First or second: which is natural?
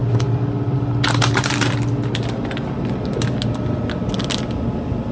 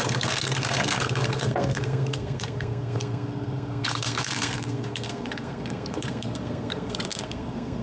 first